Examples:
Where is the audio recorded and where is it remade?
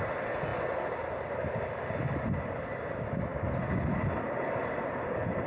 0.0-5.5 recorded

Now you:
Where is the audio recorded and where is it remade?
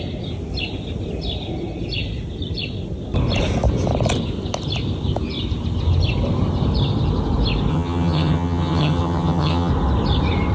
0.0-7.7 recorded; 7.7-9.7 remade; 9.7-10.5 recorded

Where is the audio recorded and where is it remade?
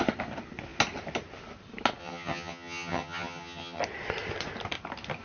0.0-2.0 recorded; 2.0-3.8 remade; 3.8-5.2 recorded